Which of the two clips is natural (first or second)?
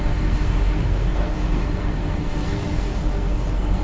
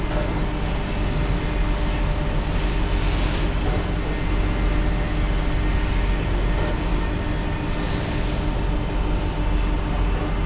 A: second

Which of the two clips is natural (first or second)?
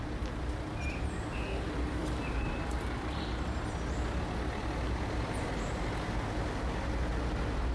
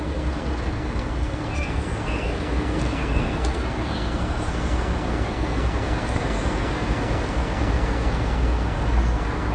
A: first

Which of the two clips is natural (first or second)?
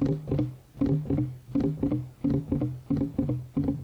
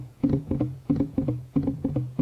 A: first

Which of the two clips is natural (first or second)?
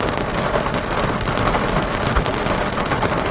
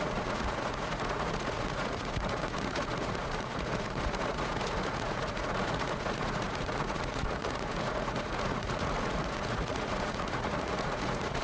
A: first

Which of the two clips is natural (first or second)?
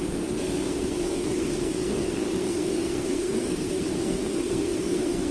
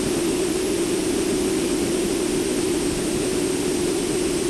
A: second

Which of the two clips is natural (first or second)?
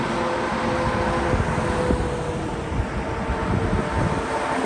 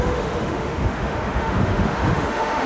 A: first